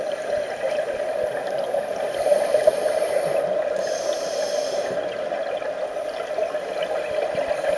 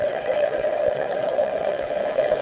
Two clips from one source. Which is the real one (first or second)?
first